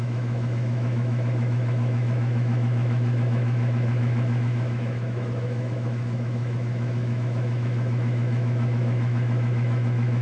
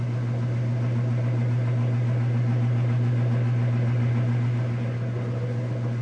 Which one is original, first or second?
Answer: second